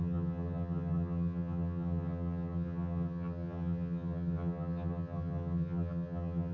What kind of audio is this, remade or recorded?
remade